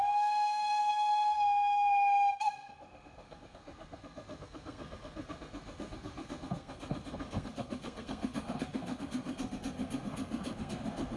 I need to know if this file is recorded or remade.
remade